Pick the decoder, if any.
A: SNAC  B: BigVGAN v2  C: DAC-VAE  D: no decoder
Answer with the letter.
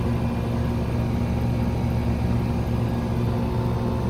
D